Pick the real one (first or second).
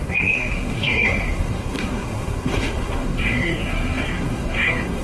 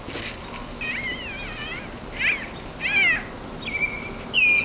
second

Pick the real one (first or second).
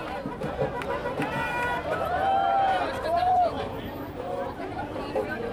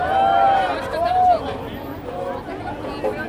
second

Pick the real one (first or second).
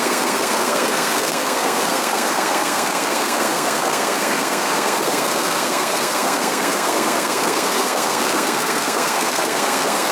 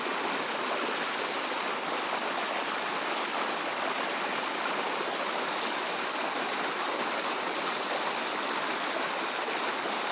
second